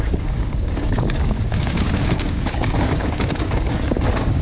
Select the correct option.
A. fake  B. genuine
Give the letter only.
A